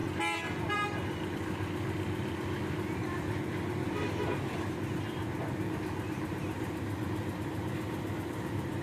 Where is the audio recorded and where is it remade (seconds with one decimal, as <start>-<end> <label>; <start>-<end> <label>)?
0.0-8.8 recorded